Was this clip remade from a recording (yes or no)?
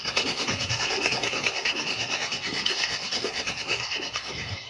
yes